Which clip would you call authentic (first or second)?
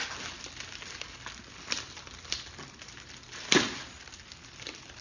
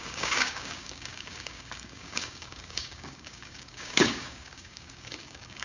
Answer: first